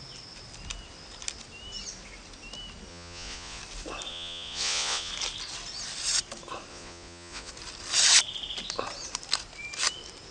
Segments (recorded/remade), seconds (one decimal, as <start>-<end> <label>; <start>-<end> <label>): 0.0-2.9 recorded; 2.9-3.6 remade; 3.6-4.1 recorded; 4.1-5.1 remade; 5.1-6.7 recorded; 6.7-7.5 remade; 7.5-10.3 recorded